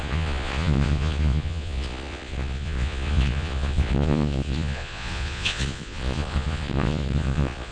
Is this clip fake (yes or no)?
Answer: yes